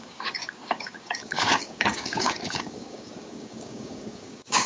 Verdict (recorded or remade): remade